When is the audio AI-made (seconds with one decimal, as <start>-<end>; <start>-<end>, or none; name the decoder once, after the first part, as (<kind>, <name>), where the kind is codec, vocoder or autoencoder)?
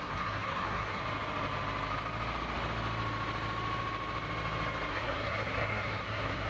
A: 0.0-1.0 (codec, SNAC); 4.9-6.5